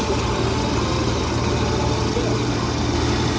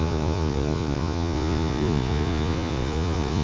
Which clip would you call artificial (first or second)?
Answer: second